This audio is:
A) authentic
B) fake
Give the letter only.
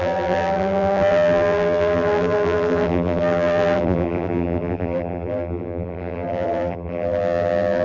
B